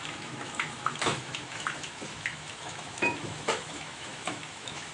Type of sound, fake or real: fake